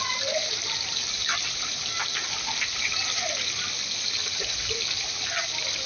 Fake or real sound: real